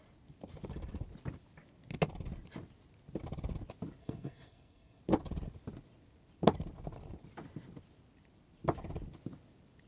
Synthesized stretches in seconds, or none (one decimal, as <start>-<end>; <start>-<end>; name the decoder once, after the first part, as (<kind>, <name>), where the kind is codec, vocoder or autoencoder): 4.0-5.0 (codec, SNAC)